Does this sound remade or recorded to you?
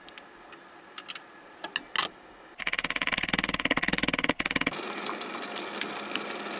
recorded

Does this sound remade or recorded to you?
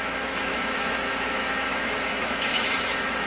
remade